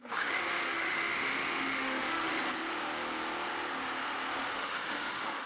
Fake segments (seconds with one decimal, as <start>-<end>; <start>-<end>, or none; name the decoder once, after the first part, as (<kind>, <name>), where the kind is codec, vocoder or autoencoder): 0.0-2.3 (autoencoder, DAC-VAE); 4.5-5.5